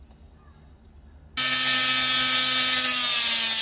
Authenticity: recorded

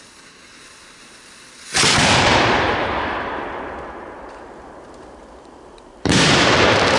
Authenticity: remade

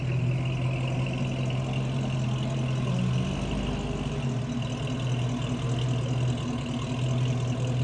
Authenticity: recorded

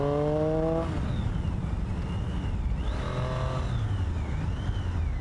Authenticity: recorded